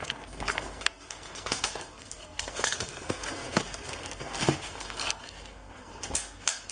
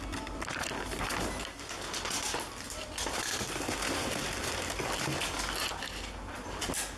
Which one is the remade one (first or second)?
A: first